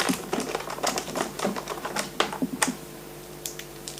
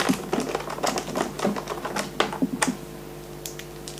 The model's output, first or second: first